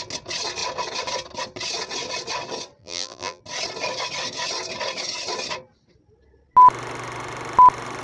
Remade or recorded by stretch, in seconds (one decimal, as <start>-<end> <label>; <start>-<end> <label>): 0.0-2.8 recorded; 2.8-3.4 remade; 3.4-8.0 recorded